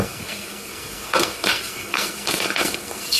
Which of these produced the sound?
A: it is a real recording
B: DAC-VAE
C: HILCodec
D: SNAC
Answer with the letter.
D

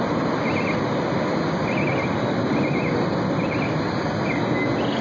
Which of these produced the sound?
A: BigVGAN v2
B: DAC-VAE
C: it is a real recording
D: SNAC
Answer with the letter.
C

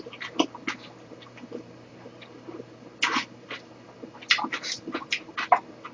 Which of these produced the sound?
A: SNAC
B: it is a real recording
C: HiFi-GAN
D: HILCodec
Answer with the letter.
B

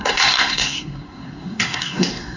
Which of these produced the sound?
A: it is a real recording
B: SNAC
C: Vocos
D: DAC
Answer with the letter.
B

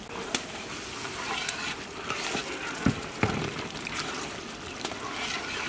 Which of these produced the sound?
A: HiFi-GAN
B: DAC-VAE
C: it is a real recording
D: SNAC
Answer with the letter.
C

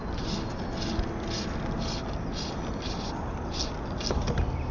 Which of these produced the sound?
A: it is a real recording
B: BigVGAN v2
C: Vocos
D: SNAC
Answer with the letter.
A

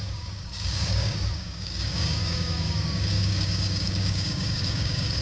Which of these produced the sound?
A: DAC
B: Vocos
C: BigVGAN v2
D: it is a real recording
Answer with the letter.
A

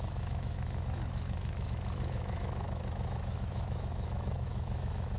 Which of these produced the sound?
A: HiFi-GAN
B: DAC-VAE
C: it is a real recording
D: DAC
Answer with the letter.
B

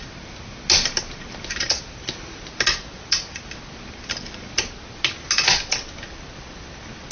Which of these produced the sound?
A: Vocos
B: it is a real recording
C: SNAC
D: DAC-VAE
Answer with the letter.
B